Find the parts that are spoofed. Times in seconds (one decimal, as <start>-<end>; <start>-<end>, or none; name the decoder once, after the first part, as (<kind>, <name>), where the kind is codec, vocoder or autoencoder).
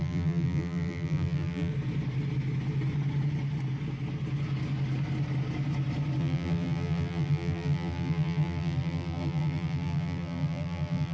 0.0-1.7 (vocoder, BigVGAN v2); 6.2-11.1